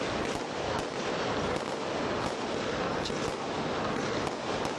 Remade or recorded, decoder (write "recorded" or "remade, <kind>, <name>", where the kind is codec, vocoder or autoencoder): recorded